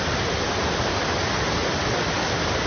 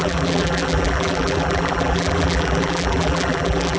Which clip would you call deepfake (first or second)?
second